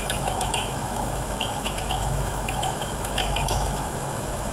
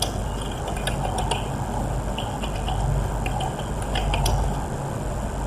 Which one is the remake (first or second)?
first